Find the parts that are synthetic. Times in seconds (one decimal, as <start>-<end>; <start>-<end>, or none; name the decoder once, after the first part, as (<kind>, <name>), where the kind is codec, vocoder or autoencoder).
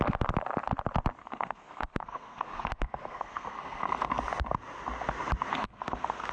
1.2-4.1 (codec, SNAC); 5.5-6.3